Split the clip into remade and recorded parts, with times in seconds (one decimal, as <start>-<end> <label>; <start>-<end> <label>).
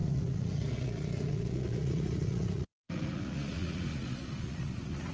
0.0-5.1 remade